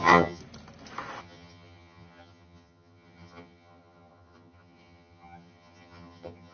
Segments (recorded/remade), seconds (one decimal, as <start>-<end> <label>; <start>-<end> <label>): 0.0-0.4 remade; 0.4-1.2 recorded; 1.2-6.5 remade